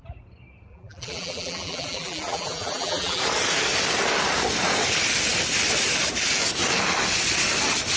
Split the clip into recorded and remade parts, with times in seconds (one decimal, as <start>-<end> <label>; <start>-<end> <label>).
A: 0.0-0.7 recorded; 0.7-3.2 remade; 3.2-8.0 recorded